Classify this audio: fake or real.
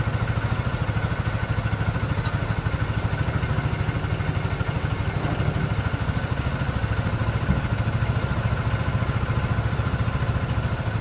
real